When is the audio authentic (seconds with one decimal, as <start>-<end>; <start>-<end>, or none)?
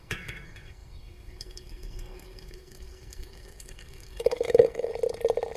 4.9-5.6